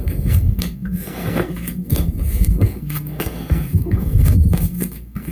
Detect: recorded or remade remade